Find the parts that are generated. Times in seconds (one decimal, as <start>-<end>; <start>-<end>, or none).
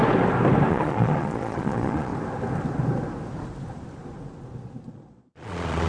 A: 0.7-2.1; 4.9-5.9